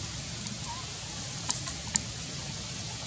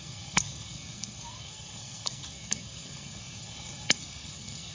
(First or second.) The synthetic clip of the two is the second